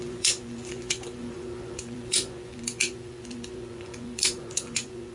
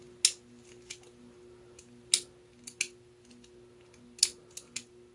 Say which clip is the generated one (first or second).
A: first